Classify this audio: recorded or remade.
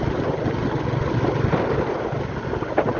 recorded